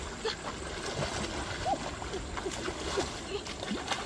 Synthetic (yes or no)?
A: no